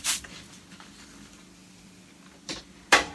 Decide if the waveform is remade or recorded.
remade